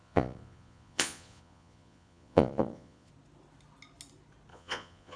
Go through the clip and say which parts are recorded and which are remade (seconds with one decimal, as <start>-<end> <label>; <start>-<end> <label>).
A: 0.0-3.1 remade; 3.1-4.5 recorded; 4.5-5.2 remade